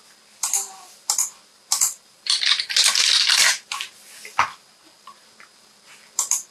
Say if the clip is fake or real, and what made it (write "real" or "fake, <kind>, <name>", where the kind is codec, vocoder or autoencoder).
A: fake, vocoder, BigVGAN v2